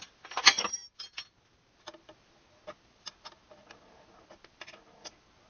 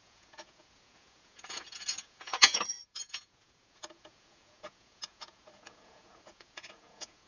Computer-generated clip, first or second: second